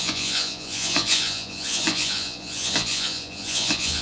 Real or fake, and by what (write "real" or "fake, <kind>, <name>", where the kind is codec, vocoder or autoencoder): fake, vocoder, Vocos